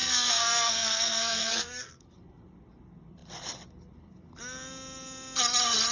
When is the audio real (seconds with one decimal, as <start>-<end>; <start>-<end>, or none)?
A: 2.0-5.9